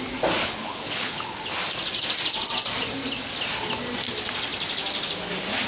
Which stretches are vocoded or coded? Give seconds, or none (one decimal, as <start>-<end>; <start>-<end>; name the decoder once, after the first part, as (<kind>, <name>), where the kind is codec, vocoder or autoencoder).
0.4-1.5 (codec, HILCodec)